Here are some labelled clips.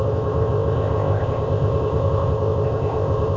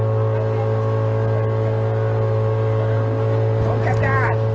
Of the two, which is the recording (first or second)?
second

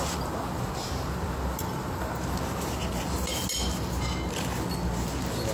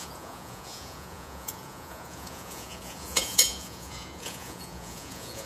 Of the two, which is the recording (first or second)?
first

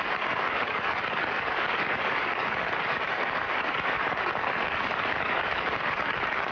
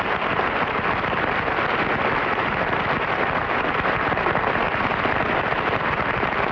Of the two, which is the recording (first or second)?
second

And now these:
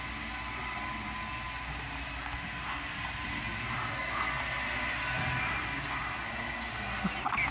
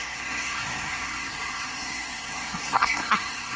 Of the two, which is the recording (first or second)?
first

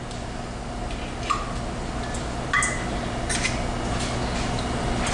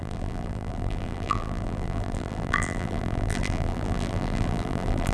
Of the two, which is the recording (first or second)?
first